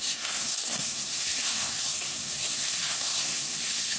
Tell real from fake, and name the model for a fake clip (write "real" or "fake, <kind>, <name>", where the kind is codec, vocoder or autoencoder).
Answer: fake, codec, SNAC